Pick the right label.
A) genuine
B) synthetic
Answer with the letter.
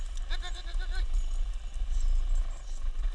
A